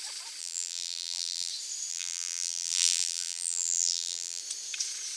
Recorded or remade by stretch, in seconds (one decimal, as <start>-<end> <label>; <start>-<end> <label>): 0.0-0.4 recorded; 0.4-1.5 remade; 1.5-1.9 recorded; 1.9-4.4 remade; 4.4-5.2 recorded